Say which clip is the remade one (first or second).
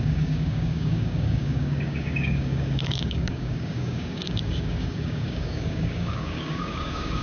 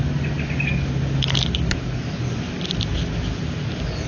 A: first